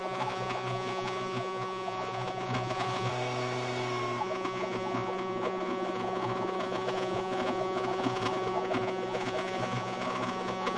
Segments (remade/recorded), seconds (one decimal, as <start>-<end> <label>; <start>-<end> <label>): 0.0-3.1 remade; 3.1-4.2 recorded; 4.2-10.8 remade